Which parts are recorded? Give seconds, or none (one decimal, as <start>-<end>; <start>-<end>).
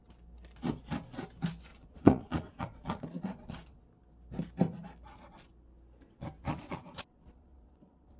0.0-1.7; 3.8-6.5